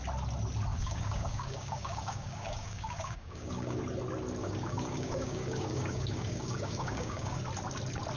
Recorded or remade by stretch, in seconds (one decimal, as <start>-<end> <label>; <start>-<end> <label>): 0.0-0.7 recorded; 0.7-3.8 remade; 3.8-4.4 recorded; 4.4-7.4 remade; 7.4-8.2 recorded